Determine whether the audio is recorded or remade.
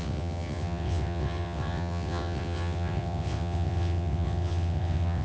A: remade